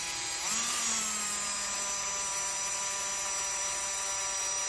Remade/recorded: recorded